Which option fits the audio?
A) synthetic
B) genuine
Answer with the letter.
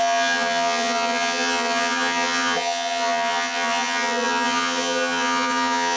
A